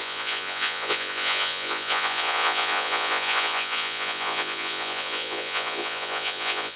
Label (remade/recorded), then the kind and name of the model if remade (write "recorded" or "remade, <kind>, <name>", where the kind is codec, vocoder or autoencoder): remade, vocoder, Vocos